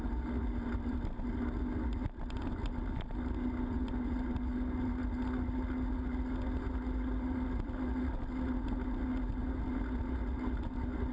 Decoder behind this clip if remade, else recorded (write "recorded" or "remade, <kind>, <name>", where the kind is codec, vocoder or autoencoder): recorded